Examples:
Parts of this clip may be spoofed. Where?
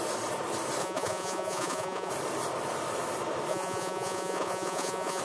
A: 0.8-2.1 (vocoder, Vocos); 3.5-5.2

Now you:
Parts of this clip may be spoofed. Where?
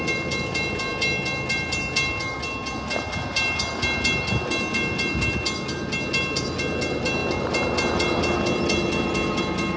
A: none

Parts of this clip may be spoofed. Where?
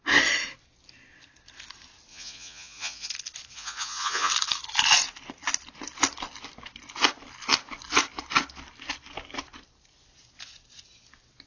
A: 2.1-3.1 (vocoder, Vocos); 3.5-4.3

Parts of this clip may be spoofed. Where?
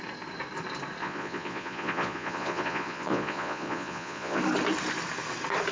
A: 1.0-4.4 (vocoder, Vocos)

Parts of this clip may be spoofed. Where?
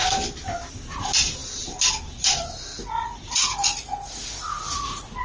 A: 2.7-5.2 (vocoder, Vocos)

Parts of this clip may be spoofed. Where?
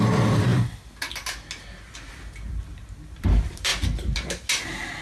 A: none